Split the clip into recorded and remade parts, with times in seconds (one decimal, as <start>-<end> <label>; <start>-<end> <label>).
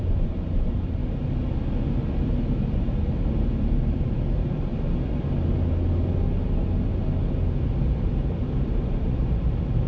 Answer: 0.0-1.0 remade; 1.0-1.9 recorded; 1.9-4.7 remade; 4.7-7.4 recorded; 7.4-9.9 remade